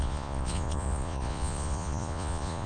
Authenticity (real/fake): fake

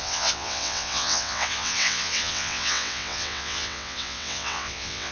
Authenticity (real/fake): fake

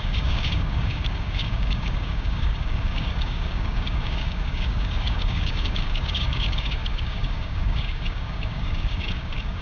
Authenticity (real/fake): fake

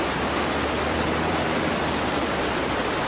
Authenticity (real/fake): fake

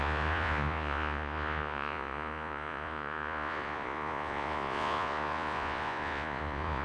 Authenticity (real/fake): fake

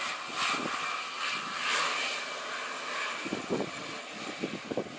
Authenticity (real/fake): real